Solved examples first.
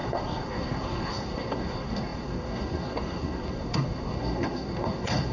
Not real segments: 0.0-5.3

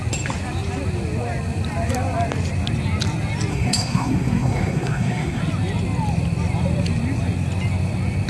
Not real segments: 3.5-5.4

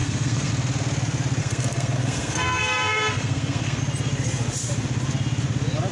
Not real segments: 0.0-0.5; 1.4-3.8

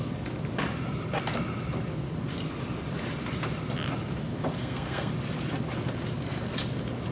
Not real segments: 4.6-5.1